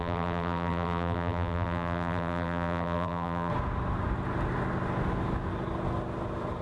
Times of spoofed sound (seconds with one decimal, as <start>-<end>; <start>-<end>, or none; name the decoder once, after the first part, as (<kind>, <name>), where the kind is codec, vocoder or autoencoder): 0.0-3.5 (vocoder, BigVGAN v2)